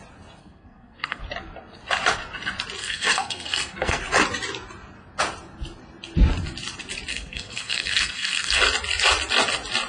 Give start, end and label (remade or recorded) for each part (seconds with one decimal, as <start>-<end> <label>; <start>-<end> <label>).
0.0-0.4 recorded; 0.4-1.2 remade; 1.2-2.8 recorded; 2.8-4.0 remade; 4.0-7.1 recorded; 7.1-8.6 remade; 8.6-9.9 recorded